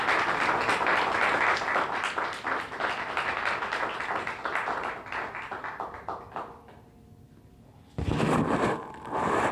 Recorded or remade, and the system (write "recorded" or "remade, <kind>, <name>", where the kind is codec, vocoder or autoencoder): recorded